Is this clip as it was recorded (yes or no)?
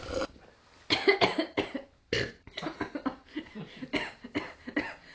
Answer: yes